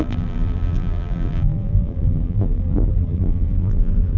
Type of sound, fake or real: fake